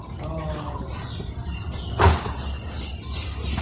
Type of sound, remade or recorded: recorded